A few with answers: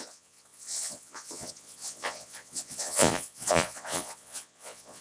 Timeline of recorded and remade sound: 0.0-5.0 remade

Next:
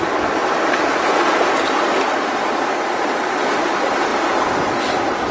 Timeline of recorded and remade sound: 0.0-5.3 recorded